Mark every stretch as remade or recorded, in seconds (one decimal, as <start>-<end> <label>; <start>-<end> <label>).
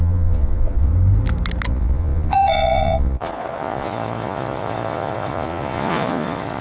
0.0-0.9 remade; 0.9-1.7 recorded; 1.7-6.6 remade